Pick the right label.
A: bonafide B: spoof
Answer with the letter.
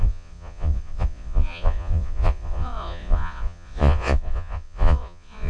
B